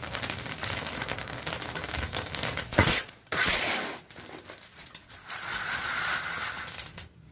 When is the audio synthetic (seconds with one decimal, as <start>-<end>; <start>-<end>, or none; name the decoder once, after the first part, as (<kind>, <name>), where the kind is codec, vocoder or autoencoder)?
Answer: 2.7-3.6 (vocoder, Vocos); 4.7-6.1